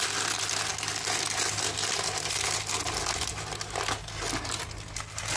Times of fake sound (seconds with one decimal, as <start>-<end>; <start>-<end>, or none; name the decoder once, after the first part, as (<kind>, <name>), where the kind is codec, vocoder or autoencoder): none